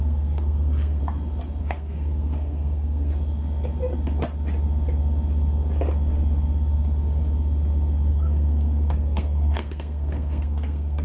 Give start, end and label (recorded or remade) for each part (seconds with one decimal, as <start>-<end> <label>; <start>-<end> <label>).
0.0-1.0 remade; 1.0-1.6 recorded; 1.6-3.1 remade; 3.1-8.1 recorded; 8.1-11.0 remade